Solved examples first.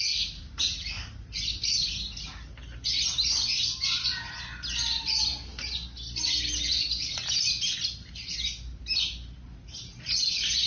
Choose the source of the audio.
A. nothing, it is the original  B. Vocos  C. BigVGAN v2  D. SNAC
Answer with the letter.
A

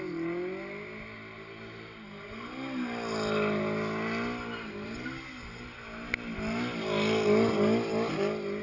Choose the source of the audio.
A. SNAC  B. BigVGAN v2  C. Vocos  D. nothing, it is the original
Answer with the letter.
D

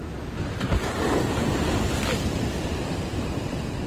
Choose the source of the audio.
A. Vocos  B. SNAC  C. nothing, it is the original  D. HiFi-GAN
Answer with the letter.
C